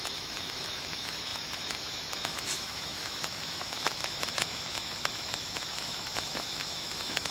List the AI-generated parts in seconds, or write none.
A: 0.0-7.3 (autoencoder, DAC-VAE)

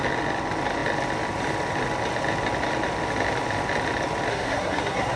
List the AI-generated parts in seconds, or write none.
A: 4.3-5.2 (codec, SNAC)

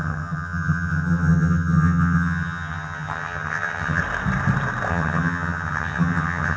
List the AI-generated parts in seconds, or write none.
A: 0.0-4.0 (vocoder, HiFi-GAN); 4.9-6.6

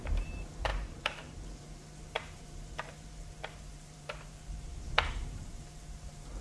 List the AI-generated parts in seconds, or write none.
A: 0.0-6.4 (vocoder, BigVGAN v2)

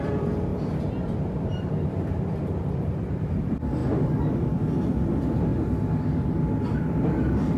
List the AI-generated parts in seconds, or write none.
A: 0.0-0.5 (vocoder, BigVGAN v2); 1.3-3.8; 4.3-5.5

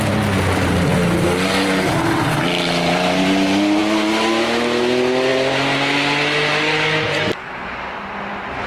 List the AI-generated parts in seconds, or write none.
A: none

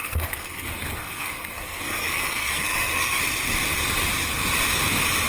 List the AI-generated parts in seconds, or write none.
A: 0.0-3.2 (codec, SNAC)